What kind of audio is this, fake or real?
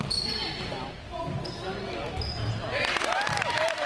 real